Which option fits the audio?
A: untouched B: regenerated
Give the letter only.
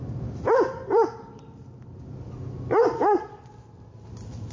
B